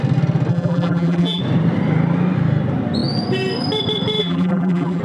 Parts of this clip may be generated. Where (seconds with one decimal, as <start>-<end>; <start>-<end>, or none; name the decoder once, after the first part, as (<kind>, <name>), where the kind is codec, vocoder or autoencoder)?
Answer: 0.5-1.4 (vocoder, BigVGAN v2); 4.2-5.0